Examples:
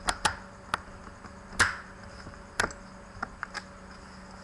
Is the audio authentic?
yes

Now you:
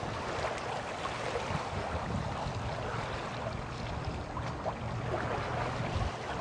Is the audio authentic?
yes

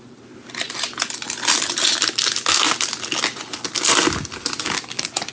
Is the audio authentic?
yes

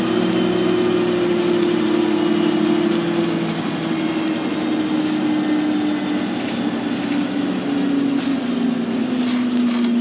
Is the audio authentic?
yes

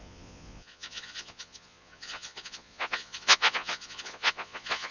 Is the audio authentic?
no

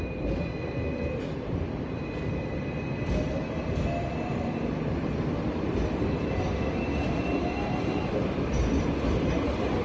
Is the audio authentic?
yes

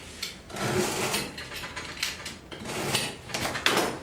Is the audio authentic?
yes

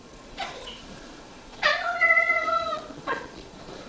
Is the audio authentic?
no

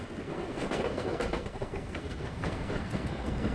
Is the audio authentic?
no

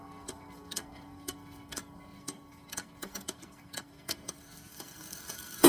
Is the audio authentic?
no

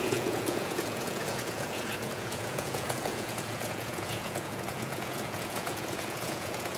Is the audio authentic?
no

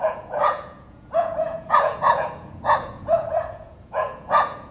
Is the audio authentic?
no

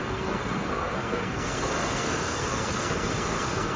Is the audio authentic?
no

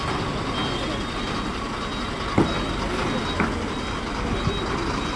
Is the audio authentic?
yes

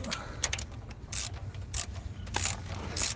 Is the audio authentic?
yes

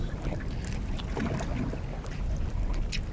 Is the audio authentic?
yes